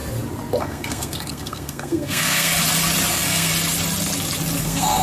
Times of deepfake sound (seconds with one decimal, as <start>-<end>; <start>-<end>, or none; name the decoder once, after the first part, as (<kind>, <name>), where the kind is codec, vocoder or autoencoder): 0.6-2.5 (codec, SNAC); 3.1-3.5; 4.6-5.0